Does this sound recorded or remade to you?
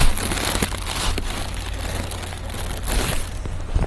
recorded